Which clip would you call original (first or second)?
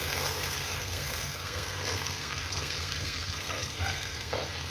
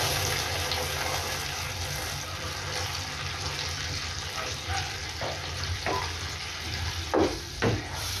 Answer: second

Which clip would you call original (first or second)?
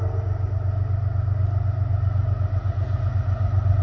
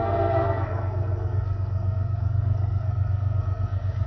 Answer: first